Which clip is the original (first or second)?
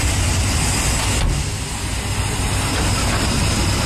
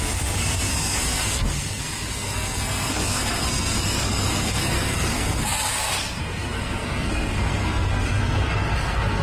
first